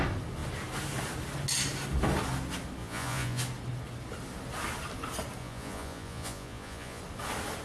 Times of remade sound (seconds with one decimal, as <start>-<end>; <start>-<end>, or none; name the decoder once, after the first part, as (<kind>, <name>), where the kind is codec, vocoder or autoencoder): 2.8-3.4 (vocoder, Vocos); 5.4-7.0